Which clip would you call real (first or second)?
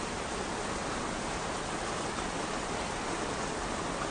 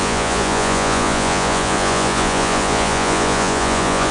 first